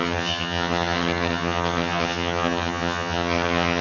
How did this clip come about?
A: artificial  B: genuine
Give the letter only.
A